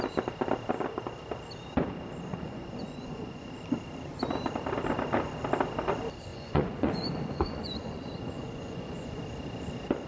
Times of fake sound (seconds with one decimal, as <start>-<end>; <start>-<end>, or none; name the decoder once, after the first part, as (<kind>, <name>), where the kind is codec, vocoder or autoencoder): 2.3-3.5 (vocoder, Vocos); 6.3-9.2